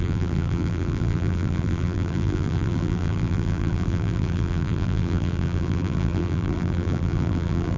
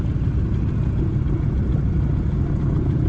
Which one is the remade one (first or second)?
first